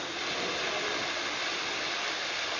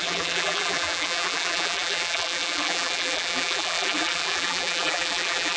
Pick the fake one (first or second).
second